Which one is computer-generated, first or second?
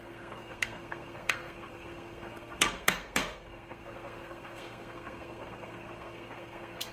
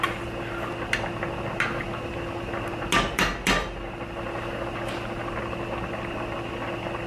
first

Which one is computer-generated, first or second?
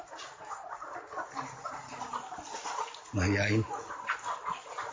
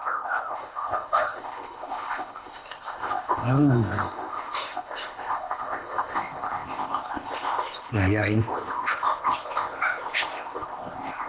second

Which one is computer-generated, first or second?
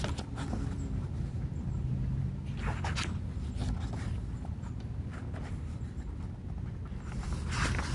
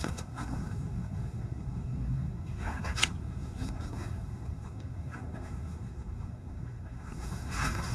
second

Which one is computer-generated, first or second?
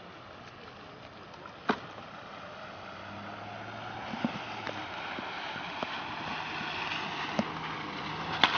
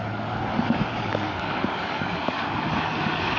second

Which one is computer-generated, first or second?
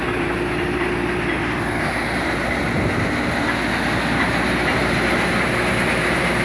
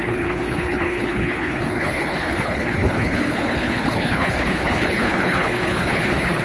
second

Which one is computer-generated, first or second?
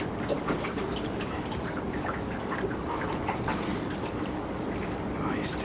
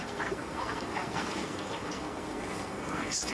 second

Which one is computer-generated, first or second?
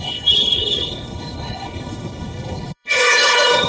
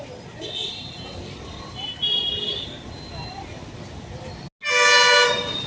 first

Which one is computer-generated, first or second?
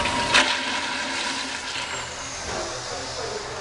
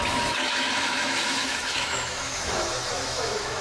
second